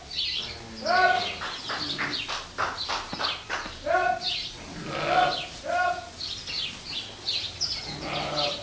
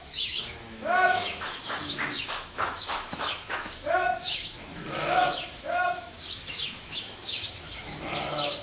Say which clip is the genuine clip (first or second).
first